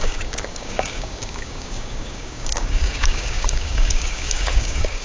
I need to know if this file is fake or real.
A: fake